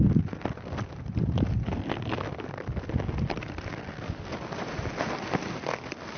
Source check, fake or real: real